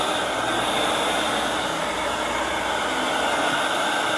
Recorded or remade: recorded